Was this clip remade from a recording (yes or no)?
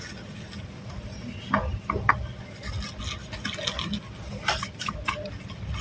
no